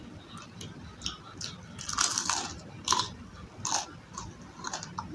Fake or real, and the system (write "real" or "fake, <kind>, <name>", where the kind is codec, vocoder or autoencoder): real